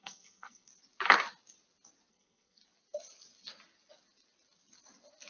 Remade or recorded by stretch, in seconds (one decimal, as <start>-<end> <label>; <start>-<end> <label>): 0.0-0.7 remade; 0.7-2.1 recorded; 2.1-2.6 remade; 2.6-5.3 recorded